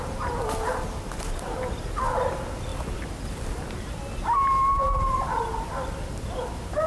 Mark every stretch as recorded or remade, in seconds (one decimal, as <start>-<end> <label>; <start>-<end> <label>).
0.0-6.9 recorded